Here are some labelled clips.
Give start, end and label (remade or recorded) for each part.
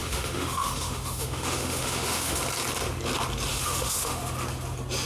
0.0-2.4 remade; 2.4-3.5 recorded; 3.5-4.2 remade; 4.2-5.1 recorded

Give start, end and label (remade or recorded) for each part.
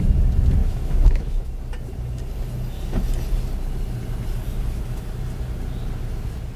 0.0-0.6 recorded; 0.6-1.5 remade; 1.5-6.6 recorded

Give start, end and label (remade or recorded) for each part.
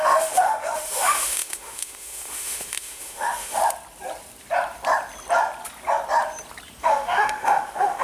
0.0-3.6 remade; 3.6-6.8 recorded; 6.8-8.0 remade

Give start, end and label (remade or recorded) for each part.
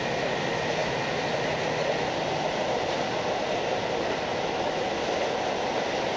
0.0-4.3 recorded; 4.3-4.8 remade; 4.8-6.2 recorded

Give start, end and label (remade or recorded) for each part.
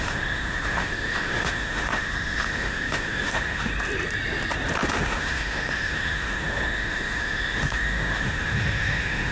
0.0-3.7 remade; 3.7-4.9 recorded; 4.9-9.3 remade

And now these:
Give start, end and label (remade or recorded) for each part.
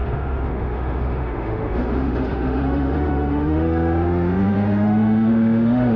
0.0-6.0 remade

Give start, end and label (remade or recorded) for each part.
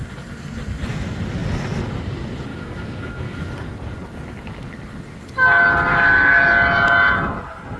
0.0-2.5 recorded; 2.5-3.4 remade; 3.4-5.9 recorded; 5.9-6.4 remade; 6.4-7.8 recorded